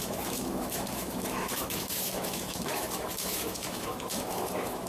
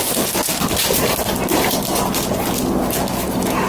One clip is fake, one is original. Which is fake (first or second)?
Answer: first